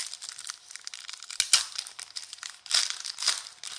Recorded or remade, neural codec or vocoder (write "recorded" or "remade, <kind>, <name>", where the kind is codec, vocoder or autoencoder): recorded